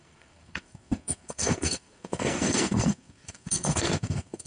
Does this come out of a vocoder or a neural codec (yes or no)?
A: yes